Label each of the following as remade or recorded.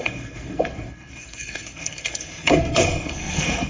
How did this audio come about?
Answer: remade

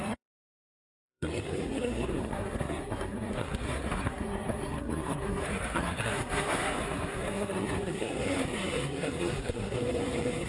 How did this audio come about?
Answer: remade